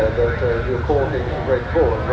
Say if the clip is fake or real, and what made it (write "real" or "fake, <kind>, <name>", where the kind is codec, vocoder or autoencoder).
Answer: real